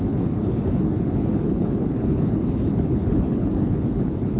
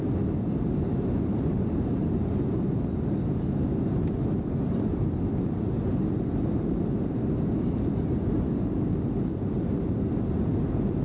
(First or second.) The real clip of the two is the second